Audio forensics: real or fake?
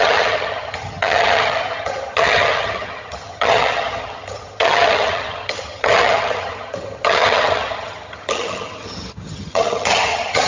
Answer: fake